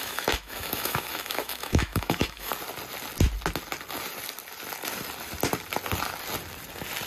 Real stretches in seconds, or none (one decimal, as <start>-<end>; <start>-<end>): 2.5-7.1